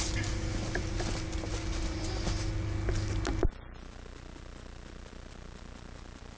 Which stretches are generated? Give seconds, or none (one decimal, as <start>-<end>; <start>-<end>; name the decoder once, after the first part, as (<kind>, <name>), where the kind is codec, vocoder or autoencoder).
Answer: none